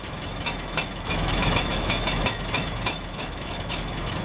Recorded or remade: remade